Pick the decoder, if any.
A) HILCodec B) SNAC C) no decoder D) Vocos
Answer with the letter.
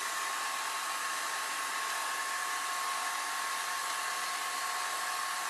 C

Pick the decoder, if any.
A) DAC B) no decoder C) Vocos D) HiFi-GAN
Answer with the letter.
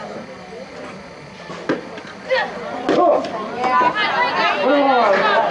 B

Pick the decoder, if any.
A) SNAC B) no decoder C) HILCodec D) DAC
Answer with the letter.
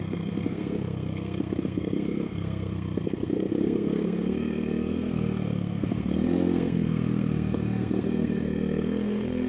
A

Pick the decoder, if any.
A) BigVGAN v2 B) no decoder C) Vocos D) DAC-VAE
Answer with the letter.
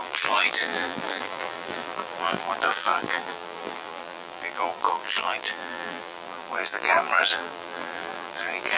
A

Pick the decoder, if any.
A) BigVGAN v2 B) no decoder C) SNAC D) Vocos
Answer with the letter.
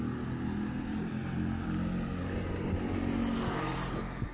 B